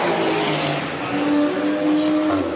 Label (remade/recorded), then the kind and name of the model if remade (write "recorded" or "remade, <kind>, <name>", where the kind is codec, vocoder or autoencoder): recorded